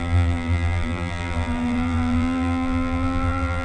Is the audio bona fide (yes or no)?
no